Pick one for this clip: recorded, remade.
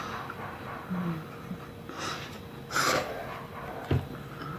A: recorded